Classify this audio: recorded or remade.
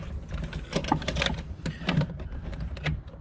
recorded